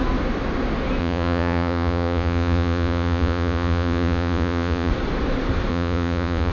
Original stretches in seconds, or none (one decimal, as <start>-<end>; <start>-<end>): 0.0-1.0; 4.9-5.7